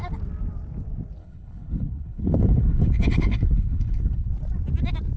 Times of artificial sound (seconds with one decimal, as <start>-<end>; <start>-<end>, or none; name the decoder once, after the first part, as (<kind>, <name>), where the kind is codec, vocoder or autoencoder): 1.2-4.3 (codec, HILCodec)